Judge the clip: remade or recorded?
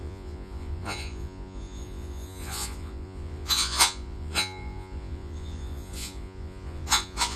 remade